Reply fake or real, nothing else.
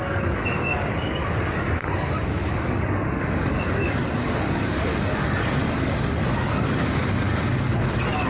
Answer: fake